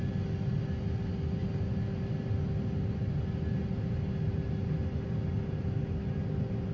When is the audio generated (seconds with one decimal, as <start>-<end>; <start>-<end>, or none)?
none